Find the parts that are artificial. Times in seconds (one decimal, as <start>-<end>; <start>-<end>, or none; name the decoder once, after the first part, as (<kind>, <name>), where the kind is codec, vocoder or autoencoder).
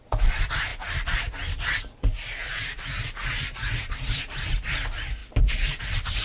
none